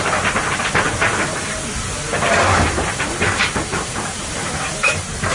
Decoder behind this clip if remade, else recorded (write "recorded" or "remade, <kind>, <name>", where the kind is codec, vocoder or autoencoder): remade, vocoder, BigVGAN v2